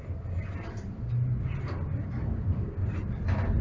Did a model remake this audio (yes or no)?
no